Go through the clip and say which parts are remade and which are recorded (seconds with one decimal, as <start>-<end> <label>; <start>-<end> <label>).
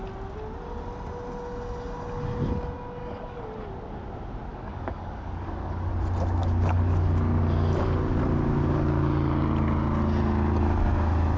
0.0-3.0 recorded; 3.0-3.5 remade; 3.5-4.5 recorded; 4.5-5.9 remade; 5.9-6.4 recorded; 6.4-7.4 remade; 7.4-11.4 recorded